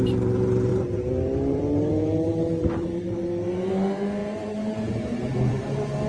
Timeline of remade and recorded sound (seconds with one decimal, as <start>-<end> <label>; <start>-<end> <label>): 0.0-0.7 recorded; 0.7-3.7 remade; 3.7-4.2 recorded; 4.2-5.6 remade; 5.6-6.1 recorded